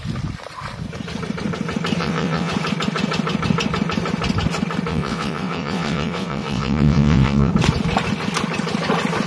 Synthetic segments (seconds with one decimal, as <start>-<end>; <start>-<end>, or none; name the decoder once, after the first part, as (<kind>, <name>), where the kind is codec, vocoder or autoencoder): 2.0-2.5 (vocoder, WaveNeXt); 4.9-7.5